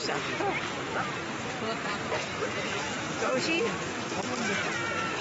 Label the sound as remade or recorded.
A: recorded